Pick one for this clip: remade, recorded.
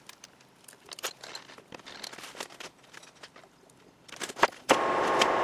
recorded